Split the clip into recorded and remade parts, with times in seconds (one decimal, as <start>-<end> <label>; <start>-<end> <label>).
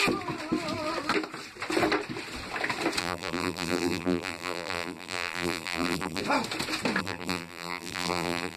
0.0-3.0 recorded; 3.0-6.2 remade; 6.2-7.0 recorded; 7.0-8.6 remade